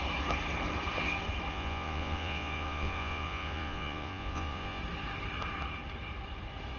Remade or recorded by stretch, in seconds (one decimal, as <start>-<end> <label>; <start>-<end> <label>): 0.0-1.5 recorded; 1.5-4.8 remade; 4.8-6.8 recorded